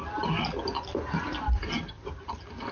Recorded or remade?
recorded